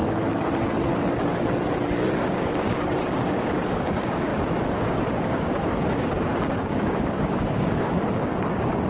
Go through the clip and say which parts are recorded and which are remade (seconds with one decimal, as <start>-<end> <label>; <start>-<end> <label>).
0.0-2.2 recorded; 2.2-8.9 remade